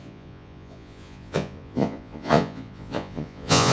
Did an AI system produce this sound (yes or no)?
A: yes